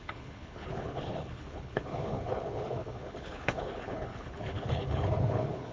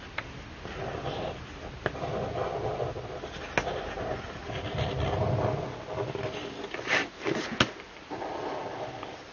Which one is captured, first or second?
second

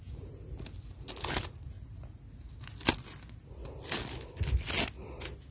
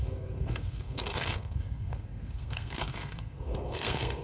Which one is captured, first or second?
first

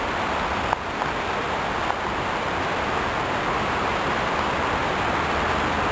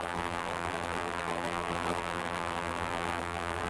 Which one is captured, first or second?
first